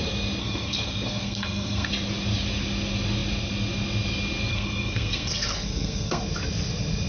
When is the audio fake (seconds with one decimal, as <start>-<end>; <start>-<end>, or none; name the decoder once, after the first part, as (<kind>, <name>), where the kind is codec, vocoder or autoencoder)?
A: 0.4-1.9 (codec, SNAC); 4.5-6.2